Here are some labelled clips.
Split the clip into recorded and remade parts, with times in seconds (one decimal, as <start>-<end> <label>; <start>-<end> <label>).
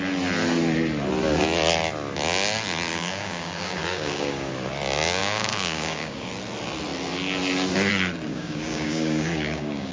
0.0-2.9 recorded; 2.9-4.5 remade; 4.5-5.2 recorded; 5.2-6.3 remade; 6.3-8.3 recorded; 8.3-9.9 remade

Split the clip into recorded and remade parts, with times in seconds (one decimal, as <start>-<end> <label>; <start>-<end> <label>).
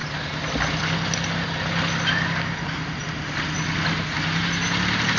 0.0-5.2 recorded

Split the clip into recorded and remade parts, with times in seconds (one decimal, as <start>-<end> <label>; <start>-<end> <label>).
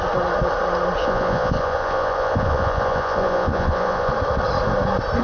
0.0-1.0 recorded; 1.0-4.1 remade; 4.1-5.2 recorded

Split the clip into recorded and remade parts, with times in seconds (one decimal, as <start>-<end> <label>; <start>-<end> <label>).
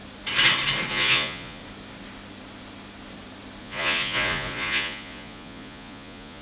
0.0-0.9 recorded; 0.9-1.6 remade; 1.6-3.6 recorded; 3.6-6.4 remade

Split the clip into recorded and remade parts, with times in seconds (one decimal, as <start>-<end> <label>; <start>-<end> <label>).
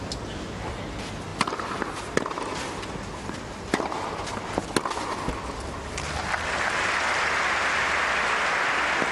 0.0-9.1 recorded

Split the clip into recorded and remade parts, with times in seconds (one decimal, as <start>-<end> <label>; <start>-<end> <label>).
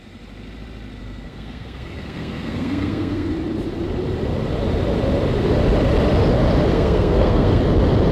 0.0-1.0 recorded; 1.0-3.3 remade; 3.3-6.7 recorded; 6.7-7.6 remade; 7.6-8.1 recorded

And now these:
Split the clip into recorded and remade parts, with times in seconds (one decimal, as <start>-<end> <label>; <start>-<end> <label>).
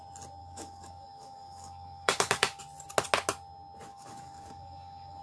0.0-0.4 recorded; 0.4-2.6 remade; 2.6-3.9 recorded; 3.9-5.2 remade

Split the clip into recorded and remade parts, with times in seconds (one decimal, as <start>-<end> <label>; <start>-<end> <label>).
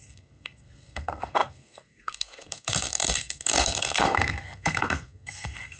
0.0-5.8 remade